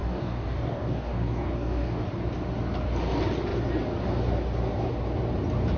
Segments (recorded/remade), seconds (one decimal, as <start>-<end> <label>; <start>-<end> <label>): 0.0-2.0 remade; 2.0-5.8 recorded